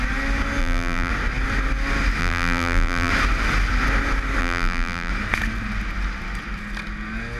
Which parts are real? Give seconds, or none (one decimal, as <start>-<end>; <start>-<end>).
0.0-0.6; 1.1-2.2; 3.1-4.4; 5.1-7.4